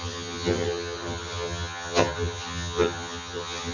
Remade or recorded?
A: remade